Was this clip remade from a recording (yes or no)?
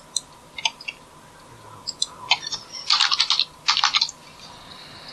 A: no